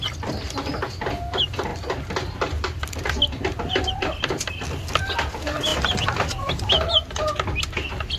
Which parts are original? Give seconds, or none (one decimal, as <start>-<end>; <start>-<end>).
0.0-8.2